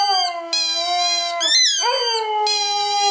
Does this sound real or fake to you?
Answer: real